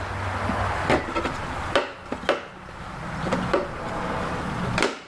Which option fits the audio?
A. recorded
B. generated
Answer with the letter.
A